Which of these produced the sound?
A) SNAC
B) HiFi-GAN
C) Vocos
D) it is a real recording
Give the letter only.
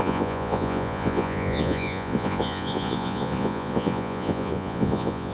C